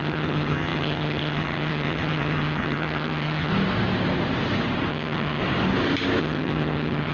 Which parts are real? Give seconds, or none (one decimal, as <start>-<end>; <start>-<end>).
3.5-4.9; 5.4-6.2